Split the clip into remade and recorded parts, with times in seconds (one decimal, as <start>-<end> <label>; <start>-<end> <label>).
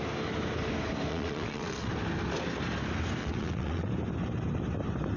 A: 0.0-1.1 recorded; 1.1-1.9 remade; 1.9-3.2 recorded; 3.2-3.9 remade; 3.9-5.2 recorded